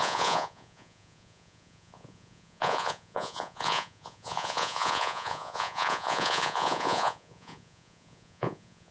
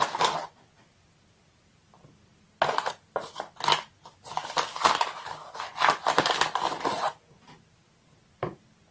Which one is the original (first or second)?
second